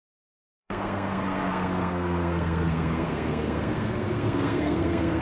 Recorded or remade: remade